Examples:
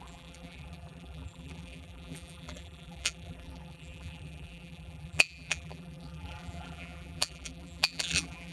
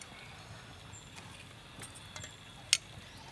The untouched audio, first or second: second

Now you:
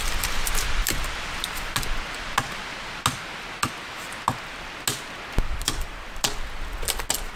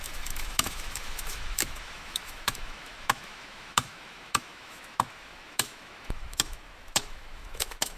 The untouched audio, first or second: first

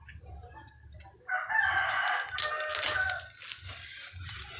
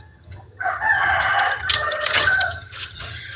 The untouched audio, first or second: first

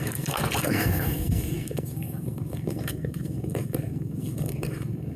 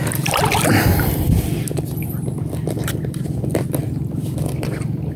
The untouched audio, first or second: second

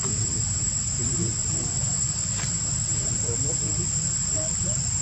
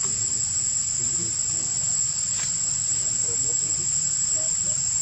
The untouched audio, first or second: second